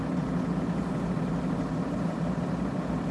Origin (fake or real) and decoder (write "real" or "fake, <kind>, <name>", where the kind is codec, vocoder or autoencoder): real